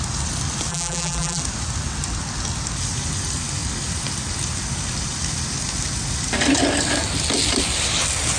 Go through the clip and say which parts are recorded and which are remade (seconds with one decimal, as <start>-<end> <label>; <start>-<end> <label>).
0.0-0.7 recorded; 0.7-1.4 remade; 1.4-8.4 recorded